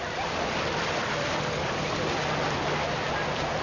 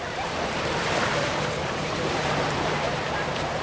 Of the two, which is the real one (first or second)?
first